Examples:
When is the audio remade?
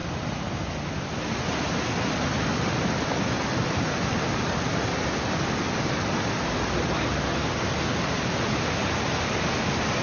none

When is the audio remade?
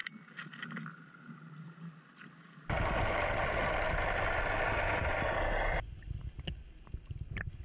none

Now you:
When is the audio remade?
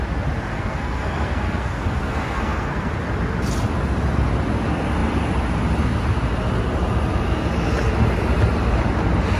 0.5-2.9 (codec, SNAC)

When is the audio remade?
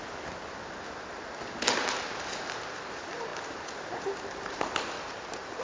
none